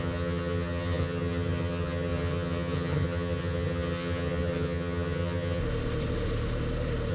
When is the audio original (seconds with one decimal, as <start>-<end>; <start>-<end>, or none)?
5.6-7.1